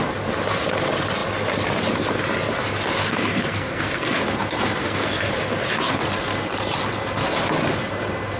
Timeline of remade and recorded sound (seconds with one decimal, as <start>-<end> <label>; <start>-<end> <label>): 0.0-3.0 recorded; 3.0-4.2 remade; 4.2-4.8 recorded; 4.8-5.3 remade; 5.3-8.4 recorded